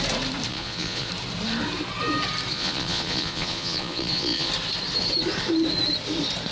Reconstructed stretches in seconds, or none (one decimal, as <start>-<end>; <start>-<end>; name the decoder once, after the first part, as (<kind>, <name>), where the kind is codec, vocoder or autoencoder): 0.5-1.1 (vocoder, Vocos); 2.5-4.5